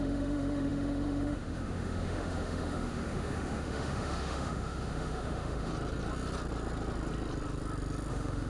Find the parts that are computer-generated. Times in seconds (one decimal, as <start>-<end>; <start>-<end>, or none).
0.0-5.7; 8.1-8.5